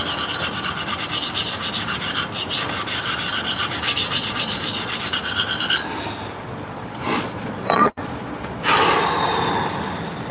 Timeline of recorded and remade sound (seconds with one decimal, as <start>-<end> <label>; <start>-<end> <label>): 0.0-4.0 recorded; 4.0-5.0 remade; 5.0-6.4 recorded; 6.4-8.6 remade; 8.6-10.3 recorded